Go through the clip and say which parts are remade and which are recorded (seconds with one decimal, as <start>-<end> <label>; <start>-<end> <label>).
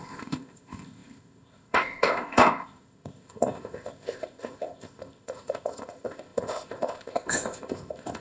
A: 0.0-8.2 remade